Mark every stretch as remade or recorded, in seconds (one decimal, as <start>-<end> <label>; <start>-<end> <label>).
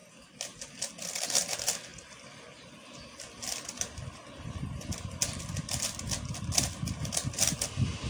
0.0-8.1 recorded